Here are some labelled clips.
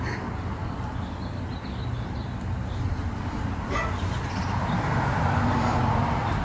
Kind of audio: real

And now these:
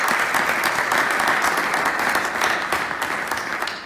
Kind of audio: real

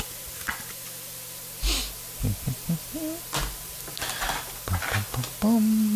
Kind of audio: real